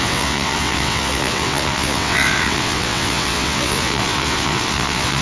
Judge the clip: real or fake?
fake